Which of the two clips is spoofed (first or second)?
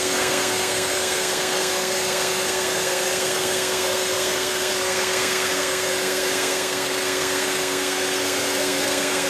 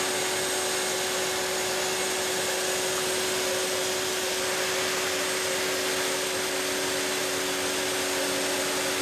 first